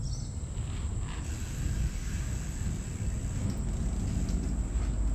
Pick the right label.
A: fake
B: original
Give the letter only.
B